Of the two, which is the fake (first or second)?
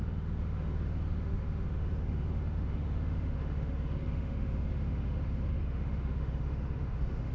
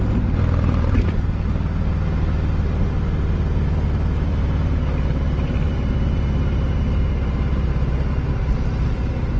first